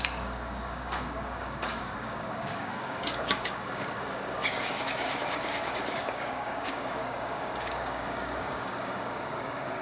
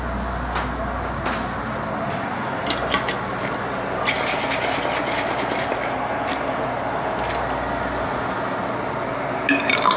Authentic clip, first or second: second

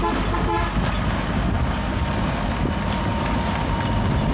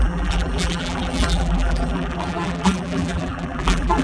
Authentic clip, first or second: first